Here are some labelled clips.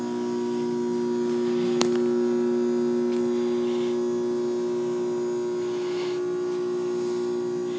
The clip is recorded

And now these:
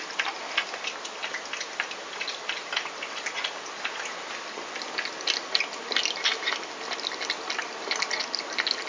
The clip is recorded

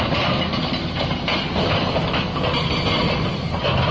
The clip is recorded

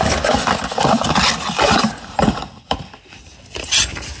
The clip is recorded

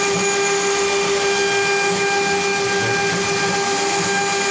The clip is recorded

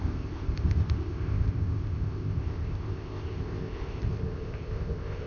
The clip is remade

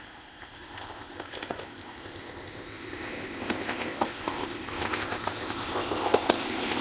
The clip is remade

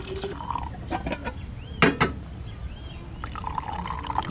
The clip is recorded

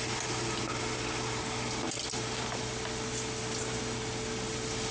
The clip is recorded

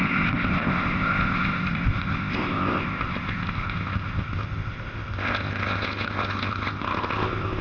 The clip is remade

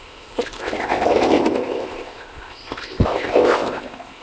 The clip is remade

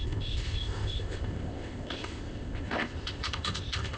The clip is remade